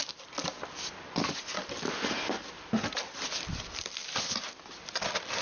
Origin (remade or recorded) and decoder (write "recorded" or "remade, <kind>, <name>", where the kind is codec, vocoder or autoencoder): recorded